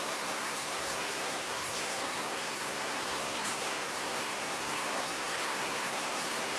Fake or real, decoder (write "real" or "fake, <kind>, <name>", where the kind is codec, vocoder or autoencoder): fake, codec, SNAC